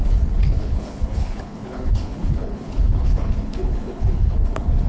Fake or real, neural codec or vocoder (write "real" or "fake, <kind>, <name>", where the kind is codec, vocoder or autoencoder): fake, codec, HILCodec